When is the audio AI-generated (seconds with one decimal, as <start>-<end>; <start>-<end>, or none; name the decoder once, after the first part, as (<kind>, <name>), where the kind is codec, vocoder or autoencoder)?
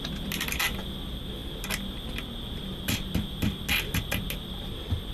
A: none